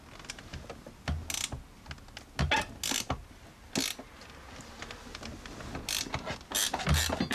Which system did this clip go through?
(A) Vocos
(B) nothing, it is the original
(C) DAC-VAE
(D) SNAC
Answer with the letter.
B